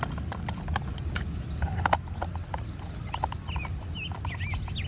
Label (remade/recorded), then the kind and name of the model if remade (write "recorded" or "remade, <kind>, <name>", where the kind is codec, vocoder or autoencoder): recorded